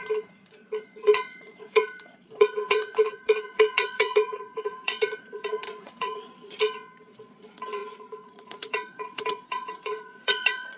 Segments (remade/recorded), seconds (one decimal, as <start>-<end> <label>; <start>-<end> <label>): 0.0-10.8 remade